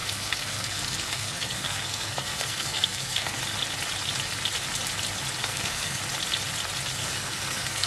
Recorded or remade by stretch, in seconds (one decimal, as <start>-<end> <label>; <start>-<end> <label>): 0.0-3.4 remade; 3.4-5.4 recorded; 5.4-6.0 remade; 6.0-7.0 recorded; 7.0-7.9 remade